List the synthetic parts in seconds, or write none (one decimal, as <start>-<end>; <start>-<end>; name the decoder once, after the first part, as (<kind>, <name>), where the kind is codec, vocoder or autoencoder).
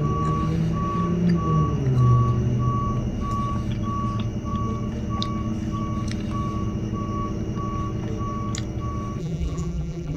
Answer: 9.2-10.2 (vocoder, BigVGAN v2)